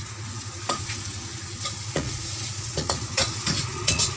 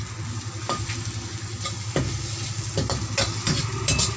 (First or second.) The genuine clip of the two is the second